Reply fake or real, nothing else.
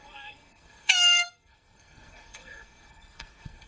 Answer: fake